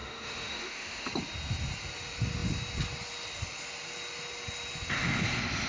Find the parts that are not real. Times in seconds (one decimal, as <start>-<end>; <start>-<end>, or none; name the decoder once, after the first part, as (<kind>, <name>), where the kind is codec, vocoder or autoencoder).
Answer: 0.0-1.1 (autoencoder, DAC-VAE)